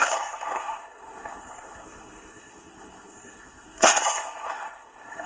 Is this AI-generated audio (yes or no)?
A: yes